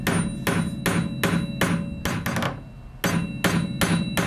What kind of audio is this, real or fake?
real